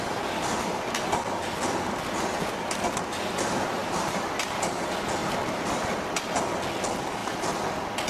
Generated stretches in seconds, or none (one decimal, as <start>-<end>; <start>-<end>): 3.8-4.3; 5.2-6.2